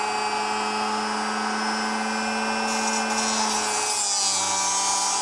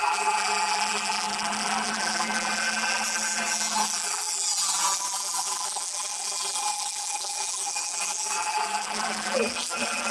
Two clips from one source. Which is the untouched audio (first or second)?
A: first